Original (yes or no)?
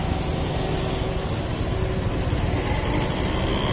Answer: yes